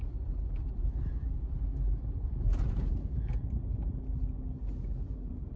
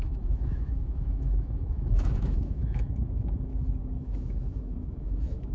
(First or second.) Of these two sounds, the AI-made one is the second